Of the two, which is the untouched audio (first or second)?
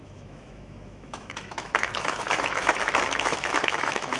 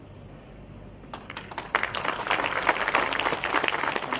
second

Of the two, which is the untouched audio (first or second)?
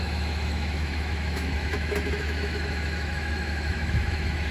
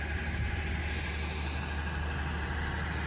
second